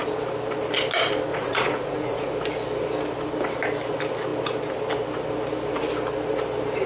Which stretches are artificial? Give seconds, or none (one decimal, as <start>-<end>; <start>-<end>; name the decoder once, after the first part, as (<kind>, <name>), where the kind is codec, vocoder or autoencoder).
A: 1.3-2.3 (vocoder, Vocos)